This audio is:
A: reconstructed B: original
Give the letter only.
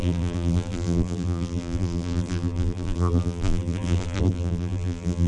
A